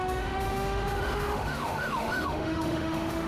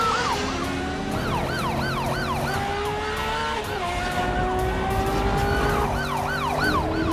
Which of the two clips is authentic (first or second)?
second